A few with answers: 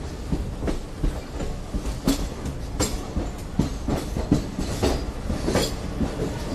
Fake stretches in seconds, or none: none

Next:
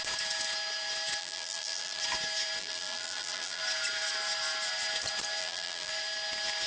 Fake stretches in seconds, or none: 1.2-2.0; 2.6-3.6; 5.4-5.9